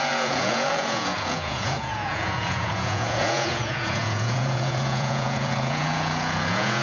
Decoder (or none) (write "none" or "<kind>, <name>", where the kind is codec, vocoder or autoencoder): vocoder, Vocos